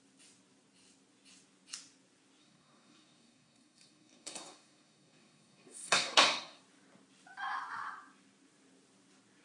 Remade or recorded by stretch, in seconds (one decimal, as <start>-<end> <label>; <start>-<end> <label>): 0.0-2.4 recorded; 2.4-6.6 remade; 6.6-9.4 recorded